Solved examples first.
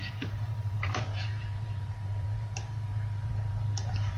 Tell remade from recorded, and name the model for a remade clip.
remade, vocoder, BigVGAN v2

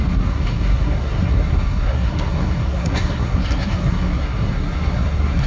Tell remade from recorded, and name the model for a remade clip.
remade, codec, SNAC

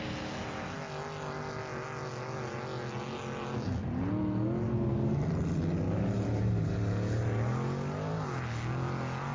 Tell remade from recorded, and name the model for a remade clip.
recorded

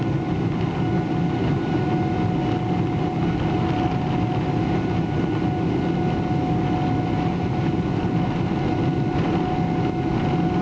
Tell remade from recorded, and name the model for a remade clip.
recorded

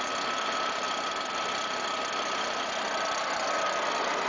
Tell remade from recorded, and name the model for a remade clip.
recorded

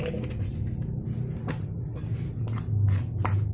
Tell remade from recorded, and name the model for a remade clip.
recorded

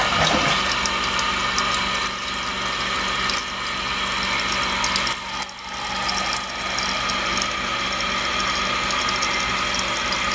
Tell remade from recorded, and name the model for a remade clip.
recorded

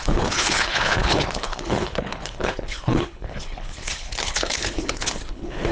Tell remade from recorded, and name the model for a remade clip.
remade, codec, HILCodec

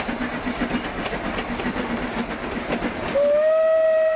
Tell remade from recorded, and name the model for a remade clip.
recorded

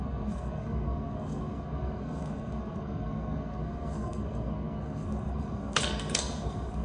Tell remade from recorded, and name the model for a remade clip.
remade, codec, SNAC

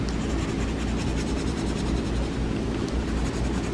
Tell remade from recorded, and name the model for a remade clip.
recorded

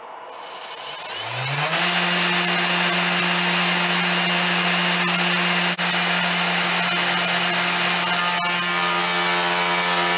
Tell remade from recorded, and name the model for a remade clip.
recorded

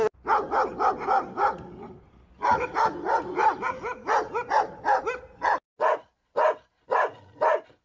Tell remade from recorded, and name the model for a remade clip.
recorded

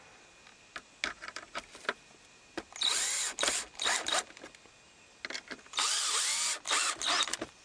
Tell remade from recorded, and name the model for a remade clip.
recorded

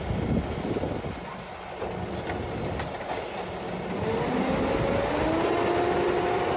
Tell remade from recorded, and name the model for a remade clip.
recorded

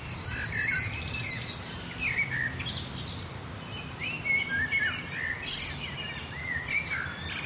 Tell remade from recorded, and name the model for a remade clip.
recorded